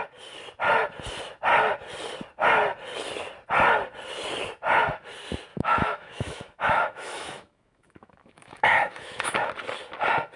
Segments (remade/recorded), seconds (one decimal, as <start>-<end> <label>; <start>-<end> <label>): 0.0-5.5 recorded; 5.5-9.5 remade; 9.5-10.4 recorded